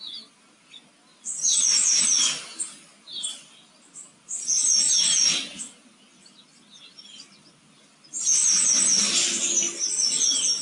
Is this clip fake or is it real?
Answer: real